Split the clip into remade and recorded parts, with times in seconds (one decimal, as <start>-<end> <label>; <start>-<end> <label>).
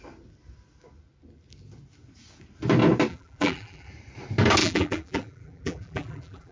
0.0-3.1 recorded; 3.1-3.9 remade; 3.9-4.6 recorded; 4.6-6.5 remade